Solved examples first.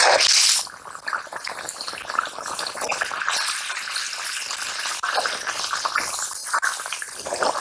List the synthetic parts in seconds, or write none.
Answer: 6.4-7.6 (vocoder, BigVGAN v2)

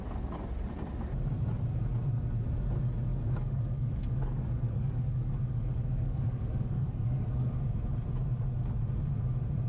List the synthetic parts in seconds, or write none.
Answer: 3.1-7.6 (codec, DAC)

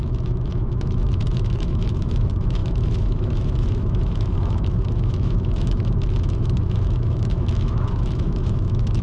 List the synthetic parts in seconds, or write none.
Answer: 0.0-9.0 (autoencoder, DAC-VAE)

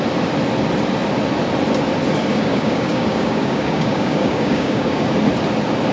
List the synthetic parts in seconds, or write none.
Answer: 2.3-5.0 (codec, DAC)